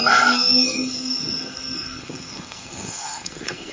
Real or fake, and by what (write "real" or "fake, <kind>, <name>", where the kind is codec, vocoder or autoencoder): fake, codec, SNAC